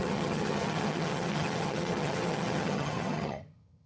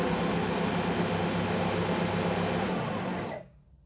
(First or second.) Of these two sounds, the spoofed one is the first